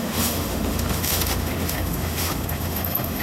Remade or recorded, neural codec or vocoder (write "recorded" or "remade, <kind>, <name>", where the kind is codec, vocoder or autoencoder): remade, autoencoder, DAC-VAE